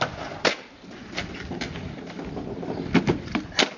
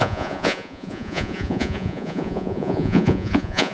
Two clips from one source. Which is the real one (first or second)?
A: first